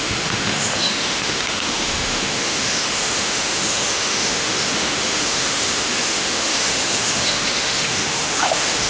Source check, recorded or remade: remade